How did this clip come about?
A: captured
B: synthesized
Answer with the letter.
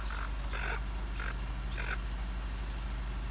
A